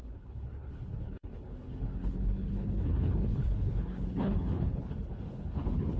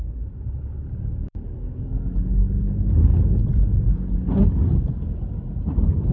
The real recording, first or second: second